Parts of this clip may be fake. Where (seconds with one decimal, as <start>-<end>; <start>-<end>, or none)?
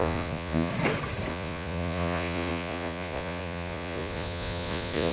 0.0-0.7; 1.3-5.1